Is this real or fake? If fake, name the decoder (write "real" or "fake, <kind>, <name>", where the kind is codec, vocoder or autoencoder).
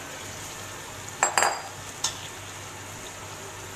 real